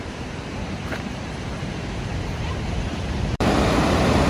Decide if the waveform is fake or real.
fake